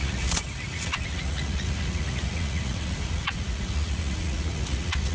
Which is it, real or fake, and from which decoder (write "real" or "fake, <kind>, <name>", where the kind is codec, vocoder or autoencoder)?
fake, vocoder, Vocos